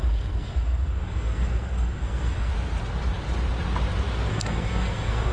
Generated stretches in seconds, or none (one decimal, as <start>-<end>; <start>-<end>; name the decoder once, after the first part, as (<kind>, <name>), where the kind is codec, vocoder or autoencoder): 0.0-2.5 (codec, SNAC); 4.3-5.3